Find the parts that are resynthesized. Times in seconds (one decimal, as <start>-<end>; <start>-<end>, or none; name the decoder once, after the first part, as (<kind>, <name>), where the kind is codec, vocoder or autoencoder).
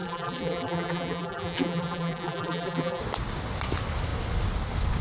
0.0-3.0 (vocoder, BigVGAN v2)